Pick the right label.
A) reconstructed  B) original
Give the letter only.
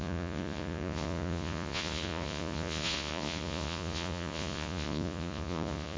A